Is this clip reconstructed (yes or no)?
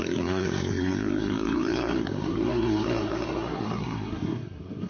yes